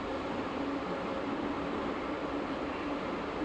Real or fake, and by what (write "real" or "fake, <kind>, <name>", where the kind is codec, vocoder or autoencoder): fake, vocoder, BigVGAN v2